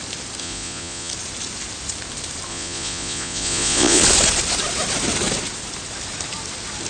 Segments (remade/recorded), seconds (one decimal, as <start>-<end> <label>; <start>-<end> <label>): 0.0-0.4 recorded; 0.4-1.1 remade; 1.1-2.5 recorded; 2.5-4.0 remade; 4.0-6.9 recorded